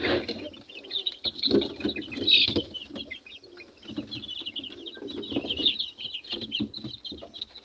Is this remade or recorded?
recorded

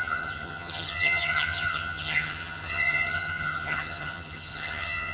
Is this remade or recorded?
remade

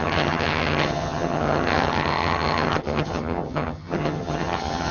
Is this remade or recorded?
remade